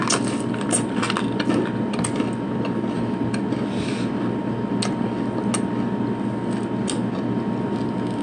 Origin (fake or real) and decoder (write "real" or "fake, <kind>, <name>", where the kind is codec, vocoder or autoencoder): real